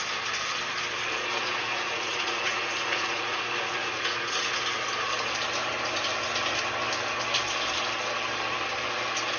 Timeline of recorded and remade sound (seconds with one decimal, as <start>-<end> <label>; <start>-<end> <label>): 0.0-1.4 recorded; 1.4-4.4 remade; 4.4-9.4 recorded